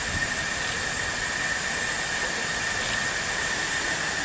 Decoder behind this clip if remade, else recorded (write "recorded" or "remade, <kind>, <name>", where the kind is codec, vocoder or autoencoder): recorded